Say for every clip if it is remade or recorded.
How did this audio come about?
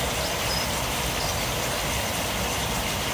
recorded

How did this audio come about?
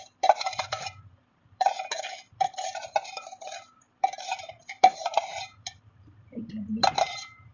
remade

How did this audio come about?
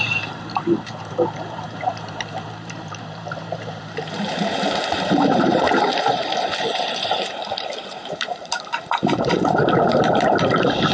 remade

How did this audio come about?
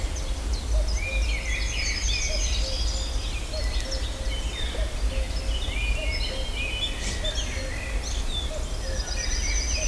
recorded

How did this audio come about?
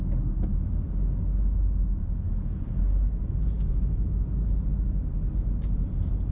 recorded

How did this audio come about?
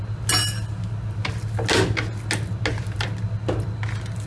recorded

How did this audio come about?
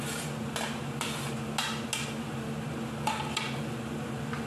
recorded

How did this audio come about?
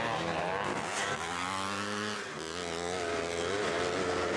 recorded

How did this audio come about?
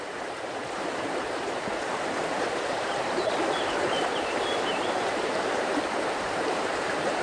remade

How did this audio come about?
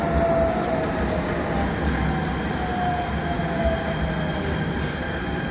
recorded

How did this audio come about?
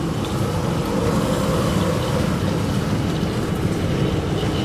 remade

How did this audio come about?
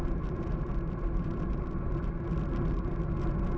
recorded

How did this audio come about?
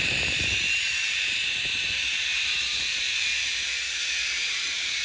remade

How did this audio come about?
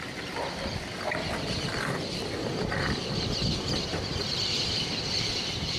remade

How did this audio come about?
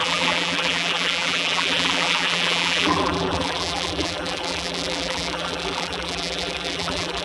remade